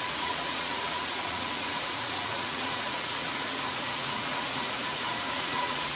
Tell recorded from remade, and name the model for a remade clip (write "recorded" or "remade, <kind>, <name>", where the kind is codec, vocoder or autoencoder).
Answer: remade, vocoder, Vocos